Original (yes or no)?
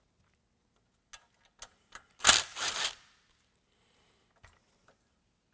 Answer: yes